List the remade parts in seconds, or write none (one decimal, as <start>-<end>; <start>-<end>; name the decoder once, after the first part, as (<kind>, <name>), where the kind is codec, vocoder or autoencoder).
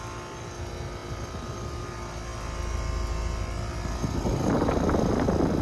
1.0-1.8 (vocoder, BigVGAN v2)